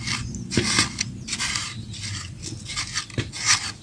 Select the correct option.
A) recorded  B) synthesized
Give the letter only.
A